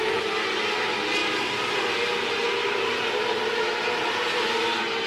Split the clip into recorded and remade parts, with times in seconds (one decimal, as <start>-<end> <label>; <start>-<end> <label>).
0.0-5.1 remade